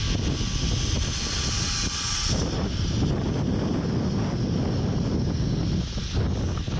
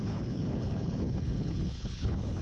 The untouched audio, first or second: first